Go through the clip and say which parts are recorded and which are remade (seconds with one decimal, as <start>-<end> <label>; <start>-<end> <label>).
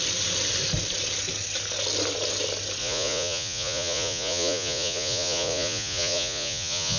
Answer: 0.0-2.8 recorded; 2.8-7.0 remade